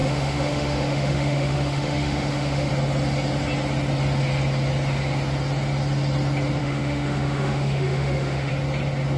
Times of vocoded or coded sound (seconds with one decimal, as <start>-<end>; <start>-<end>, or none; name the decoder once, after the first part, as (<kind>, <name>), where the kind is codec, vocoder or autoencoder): 0.0-2.7 (autoencoder, DAC-VAE); 6.6-8.5